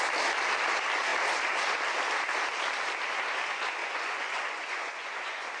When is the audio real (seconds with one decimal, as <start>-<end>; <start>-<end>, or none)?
0.0-3.8